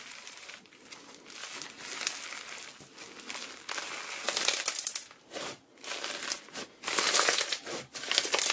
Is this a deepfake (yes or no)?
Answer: no